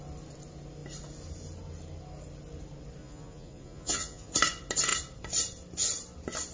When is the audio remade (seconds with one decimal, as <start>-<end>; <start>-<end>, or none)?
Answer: 3.0-4.3